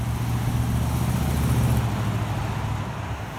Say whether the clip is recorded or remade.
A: recorded